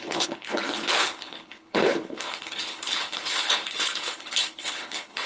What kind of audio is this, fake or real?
fake